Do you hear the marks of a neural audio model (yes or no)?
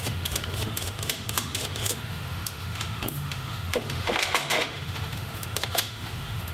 yes